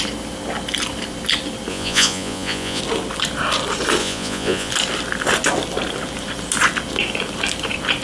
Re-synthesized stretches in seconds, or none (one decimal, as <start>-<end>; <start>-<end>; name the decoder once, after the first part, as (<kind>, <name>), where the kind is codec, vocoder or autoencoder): 1.7-2.8 (vocoder, Vocos); 4.0-4.7

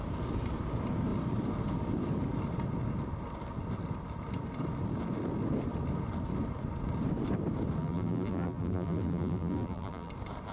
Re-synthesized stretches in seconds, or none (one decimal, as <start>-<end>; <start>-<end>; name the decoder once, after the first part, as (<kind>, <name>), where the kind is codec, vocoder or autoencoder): 7.8-10.1 (vocoder, BigVGAN v2)

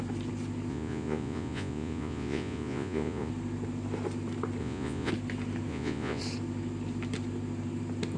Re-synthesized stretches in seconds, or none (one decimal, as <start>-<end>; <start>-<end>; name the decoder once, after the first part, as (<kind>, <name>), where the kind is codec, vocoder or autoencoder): 0.7-3.3 (vocoder, Vocos); 4.6-5.1; 5.7-6.2

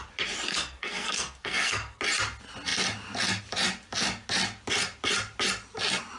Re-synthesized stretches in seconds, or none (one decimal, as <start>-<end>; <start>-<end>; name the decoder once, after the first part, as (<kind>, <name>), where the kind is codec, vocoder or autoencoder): 0.5-2.0 (codec, SNAC)

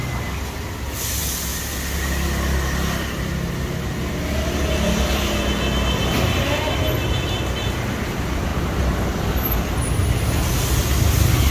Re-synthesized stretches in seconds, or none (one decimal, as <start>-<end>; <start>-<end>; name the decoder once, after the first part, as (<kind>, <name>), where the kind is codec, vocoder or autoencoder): none

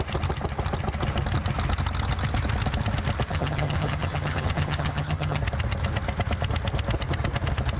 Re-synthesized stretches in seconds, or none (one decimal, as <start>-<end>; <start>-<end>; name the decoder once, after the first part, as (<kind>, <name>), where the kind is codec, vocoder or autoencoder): 3.3-5.4 (vocoder, HiFi-GAN)

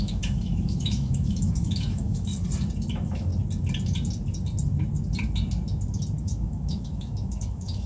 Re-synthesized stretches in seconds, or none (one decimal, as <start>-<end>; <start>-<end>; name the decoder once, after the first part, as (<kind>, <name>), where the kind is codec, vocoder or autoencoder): 0.0-2.3 (autoencoder, DAC-VAE); 2.9-3.3; 6.2-7.9

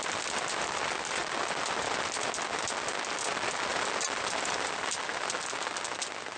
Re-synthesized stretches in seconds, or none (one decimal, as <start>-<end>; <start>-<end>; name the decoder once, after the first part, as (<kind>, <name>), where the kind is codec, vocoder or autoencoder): 3.7-5.4 (vocoder, BigVGAN v2)